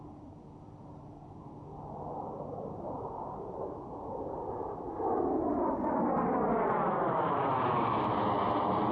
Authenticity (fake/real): real